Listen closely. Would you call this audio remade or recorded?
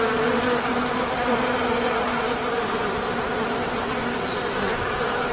remade